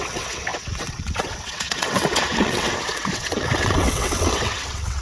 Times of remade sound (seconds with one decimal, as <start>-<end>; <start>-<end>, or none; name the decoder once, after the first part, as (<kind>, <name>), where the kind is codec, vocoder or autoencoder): 0.0-5.0 (vocoder, WaveNeXt)

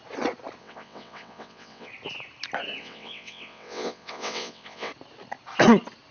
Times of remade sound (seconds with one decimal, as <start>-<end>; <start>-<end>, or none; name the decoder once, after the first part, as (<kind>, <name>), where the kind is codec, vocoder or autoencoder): 0.6-1.9 (vocoder, WaveNeXt); 2.8-4.9

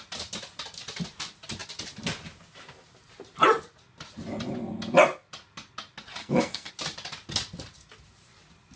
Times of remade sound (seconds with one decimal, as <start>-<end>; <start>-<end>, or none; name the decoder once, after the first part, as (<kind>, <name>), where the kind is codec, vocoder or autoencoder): 6.2-6.7 (codec, SNAC)

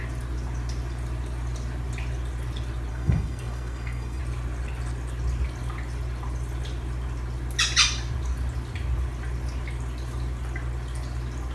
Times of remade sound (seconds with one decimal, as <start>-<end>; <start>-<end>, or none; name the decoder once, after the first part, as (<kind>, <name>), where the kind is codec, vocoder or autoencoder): 2.9-4.2 (codec, SNAC)

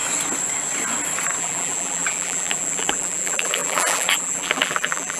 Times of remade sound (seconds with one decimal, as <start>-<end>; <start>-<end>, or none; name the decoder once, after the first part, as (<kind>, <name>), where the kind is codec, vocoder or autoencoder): 1.4-5.2 (vocoder, BigVGAN v2)

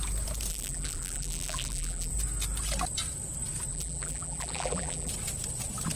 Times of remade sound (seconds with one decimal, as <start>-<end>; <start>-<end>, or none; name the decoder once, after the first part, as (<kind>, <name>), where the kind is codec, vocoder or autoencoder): 0.5-2.1 (vocoder, BigVGAN v2); 3.7-5.1

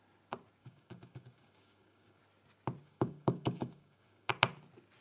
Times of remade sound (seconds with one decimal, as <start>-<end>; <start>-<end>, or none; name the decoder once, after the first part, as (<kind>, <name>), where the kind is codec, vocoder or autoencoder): 0.6-2.2 (codec, DAC); 2.8-4.3

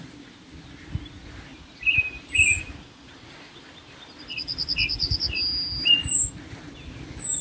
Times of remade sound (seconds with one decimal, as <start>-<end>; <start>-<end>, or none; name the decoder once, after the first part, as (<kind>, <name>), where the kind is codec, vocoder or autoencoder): none